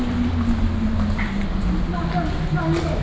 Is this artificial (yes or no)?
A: no